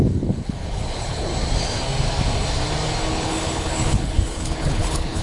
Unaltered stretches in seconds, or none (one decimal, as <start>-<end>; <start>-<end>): 1.3-3.1